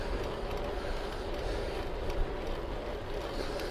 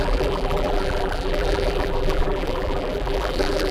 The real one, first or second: first